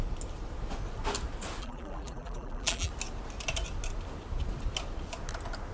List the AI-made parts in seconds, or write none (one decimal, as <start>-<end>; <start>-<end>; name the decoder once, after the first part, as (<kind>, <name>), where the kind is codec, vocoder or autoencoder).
1.6-2.9 (vocoder, BigVGAN v2)